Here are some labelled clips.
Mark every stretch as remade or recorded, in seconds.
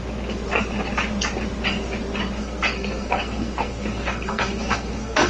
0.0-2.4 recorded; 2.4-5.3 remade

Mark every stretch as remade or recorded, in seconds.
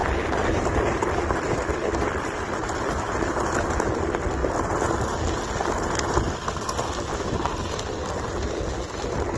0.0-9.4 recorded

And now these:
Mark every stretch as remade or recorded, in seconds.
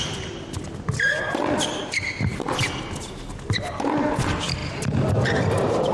0.0-5.9 recorded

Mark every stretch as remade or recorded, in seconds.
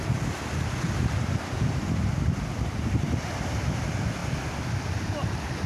0.0-5.7 recorded